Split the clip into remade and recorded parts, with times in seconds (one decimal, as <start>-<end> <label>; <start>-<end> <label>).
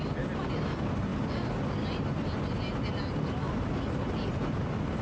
0.0-5.0 recorded